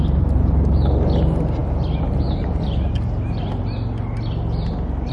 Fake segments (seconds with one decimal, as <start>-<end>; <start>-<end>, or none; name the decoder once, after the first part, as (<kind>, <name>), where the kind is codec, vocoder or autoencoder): none

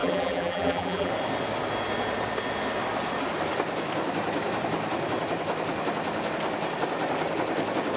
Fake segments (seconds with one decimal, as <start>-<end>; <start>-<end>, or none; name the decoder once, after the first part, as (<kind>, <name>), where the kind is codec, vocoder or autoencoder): 0.0-1.1 (vocoder, BigVGAN v2)

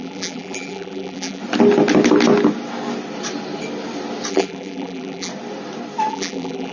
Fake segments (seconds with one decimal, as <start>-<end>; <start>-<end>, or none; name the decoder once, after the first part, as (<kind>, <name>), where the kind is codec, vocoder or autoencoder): 0.0-1.4 (vocoder, BigVGAN v2); 4.3-5.3; 6.1-6.7

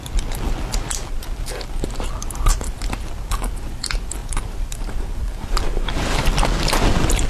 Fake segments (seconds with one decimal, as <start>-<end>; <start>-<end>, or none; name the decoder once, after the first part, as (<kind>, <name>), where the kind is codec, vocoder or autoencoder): 1.0-2.1 (vocoder, BigVGAN v2); 4.2-6.2

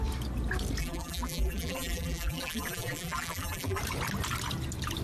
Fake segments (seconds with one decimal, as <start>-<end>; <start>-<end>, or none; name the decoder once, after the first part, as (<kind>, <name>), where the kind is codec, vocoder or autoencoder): 0.8-3.8 (vocoder, BigVGAN v2)

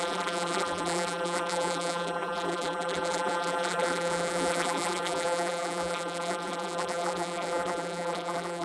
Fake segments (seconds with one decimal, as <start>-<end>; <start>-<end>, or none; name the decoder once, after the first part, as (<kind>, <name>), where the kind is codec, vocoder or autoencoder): 0.0-8.6 (vocoder, BigVGAN v2)